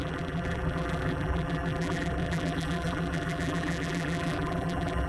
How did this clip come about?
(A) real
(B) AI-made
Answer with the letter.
B